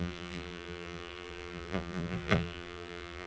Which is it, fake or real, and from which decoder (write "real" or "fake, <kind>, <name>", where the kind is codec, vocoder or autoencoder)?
fake, vocoder, BigVGAN v2